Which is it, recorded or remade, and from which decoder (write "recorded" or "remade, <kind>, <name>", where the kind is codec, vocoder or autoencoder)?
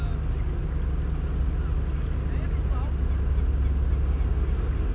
recorded